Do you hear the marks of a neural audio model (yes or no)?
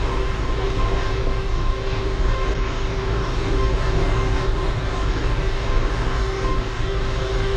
yes